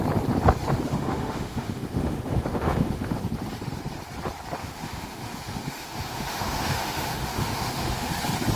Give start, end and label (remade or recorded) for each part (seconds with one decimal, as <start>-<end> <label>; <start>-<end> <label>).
0.0-0.9 recorded; 0.9-3.2 remade; 3.2-4.6 recorded; 4.6-8.1 remade; 8.1-8.6 recorded